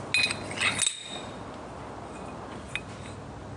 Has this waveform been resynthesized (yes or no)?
no